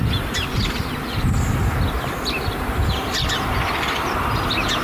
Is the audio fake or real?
fake